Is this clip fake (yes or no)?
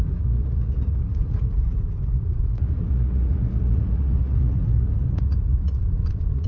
yes